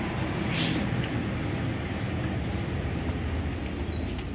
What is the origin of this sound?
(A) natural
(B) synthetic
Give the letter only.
A